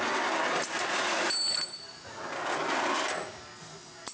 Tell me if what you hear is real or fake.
real